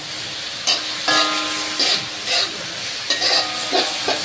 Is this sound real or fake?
real